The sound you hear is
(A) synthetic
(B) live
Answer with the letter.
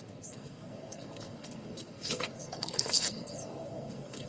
A